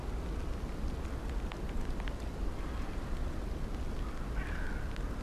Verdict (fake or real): real